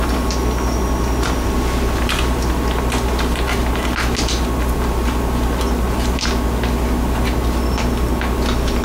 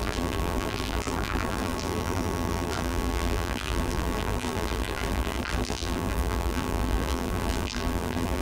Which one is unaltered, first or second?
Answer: first